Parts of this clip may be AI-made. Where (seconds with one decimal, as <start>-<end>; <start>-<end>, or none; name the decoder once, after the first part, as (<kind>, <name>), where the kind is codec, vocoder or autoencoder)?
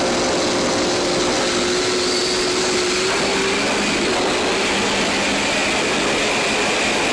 none